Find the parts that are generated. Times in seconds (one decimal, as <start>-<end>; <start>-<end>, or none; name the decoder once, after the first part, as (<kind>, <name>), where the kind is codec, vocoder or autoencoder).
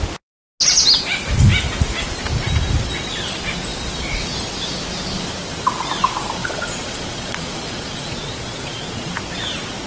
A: 6.4-9.1 (vocoder, Vocos)